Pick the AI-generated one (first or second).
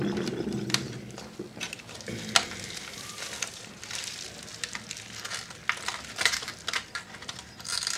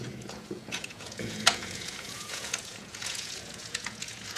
second